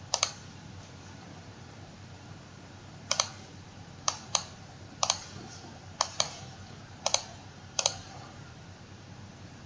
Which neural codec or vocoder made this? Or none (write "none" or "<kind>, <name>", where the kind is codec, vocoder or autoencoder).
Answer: vocoder, BigVGAN v2